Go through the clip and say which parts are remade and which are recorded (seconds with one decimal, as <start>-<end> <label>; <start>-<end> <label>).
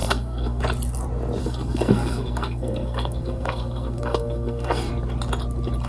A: 0.0-0.6 remade; 0.6-1.4 recorded; 1.4-4.9 remade; 4.9-5.9 recorded